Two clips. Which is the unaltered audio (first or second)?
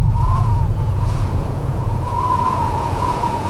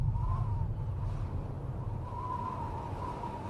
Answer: second